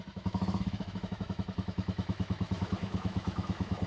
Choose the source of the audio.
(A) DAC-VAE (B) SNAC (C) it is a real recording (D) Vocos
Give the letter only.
A